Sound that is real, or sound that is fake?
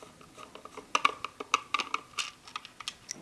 real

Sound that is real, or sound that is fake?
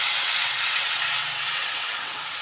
fake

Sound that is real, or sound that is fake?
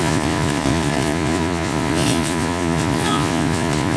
fake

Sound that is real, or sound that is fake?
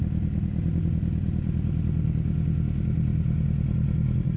real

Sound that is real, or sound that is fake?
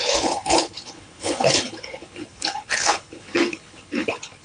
fake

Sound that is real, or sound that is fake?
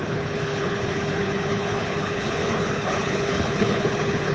fake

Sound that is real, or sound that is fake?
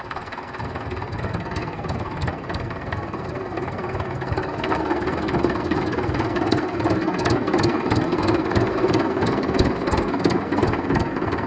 fake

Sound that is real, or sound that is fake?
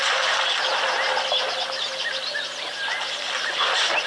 real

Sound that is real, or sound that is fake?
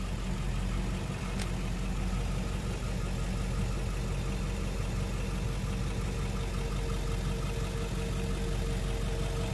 real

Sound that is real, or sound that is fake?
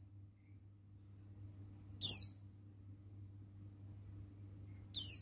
real